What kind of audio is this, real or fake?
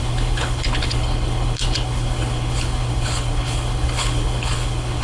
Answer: fake